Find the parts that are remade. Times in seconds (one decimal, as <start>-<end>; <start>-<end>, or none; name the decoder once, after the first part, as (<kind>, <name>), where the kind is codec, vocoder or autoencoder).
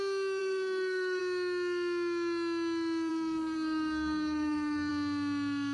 0.4-1.2 (codec, SNAC); 3.1-4.9